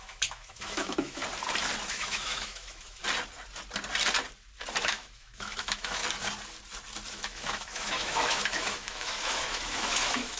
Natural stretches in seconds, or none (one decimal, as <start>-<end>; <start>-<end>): 1.2-1.9; 3.0-4.8; 6.0-7.1